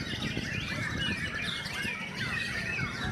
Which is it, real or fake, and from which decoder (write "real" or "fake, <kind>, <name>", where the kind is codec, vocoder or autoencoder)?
real